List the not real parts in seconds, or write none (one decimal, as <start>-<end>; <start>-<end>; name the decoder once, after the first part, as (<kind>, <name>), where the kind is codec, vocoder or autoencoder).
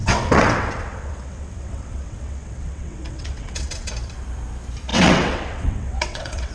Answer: 0.0-3.9 (vocoder, WaveNeXt); 4.9-6.5